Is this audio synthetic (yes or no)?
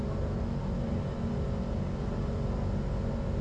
no